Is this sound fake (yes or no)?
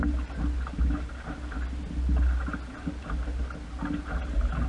no